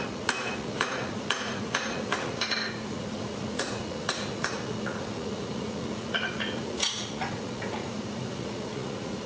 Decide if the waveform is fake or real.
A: fake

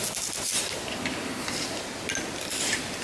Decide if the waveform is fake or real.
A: real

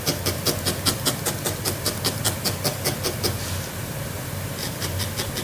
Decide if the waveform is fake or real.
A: real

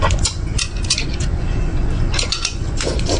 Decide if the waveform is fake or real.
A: fake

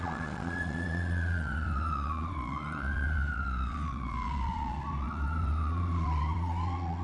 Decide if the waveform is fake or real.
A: fake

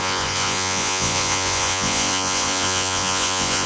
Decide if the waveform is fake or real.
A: fake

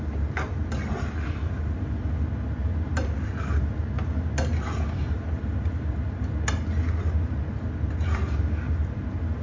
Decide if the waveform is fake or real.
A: real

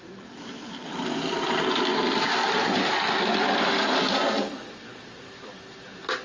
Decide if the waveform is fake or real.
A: real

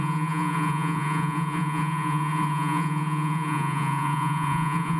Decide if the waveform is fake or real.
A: fake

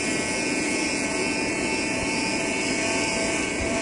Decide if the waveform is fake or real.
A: fake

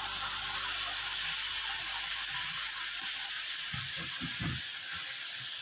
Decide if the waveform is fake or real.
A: real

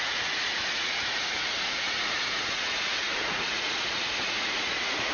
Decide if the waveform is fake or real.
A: fake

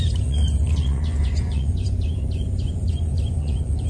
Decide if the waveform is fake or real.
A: fake